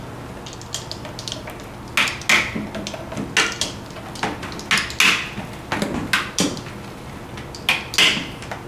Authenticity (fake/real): real